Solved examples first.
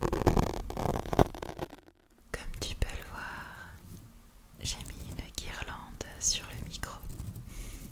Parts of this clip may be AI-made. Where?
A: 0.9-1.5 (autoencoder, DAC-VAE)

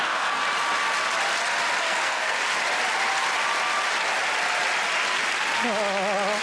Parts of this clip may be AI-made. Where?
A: 0.0-0.4 (codec, SNAC); 1.8-2.4

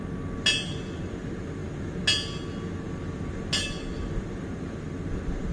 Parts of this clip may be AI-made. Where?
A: none

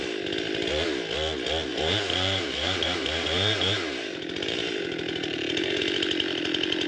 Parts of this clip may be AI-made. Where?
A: 1.7-5.8 (vocoder, BigVGAN v2)